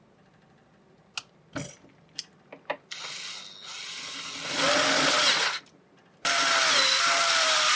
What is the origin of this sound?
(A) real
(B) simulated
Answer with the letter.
A